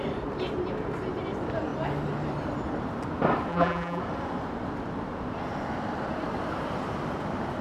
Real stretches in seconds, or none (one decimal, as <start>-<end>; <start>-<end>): 0.0-3.5; 4.0-7.6